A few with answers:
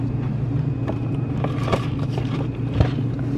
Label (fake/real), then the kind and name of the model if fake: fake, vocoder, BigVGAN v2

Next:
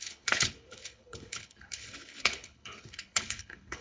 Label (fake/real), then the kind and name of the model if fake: fake, codec, HILCodec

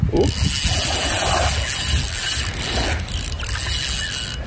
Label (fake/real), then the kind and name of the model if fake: real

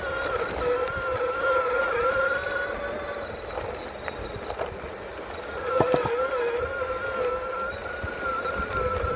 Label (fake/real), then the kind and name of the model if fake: real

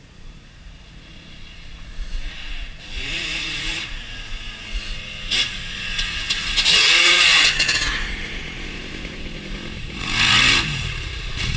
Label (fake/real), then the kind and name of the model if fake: fake, vocoder, Vocos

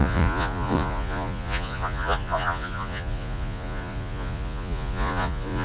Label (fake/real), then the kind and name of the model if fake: fake, vocoder, Vocos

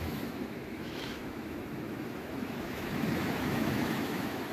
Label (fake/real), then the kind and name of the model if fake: fake, autoencoder, DAC-VAE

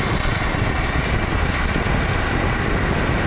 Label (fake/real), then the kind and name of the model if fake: real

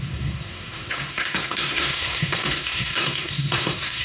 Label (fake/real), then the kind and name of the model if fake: fake, codec, SNAC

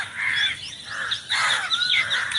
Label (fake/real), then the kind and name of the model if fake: fake, vocoder, BigVGAN v2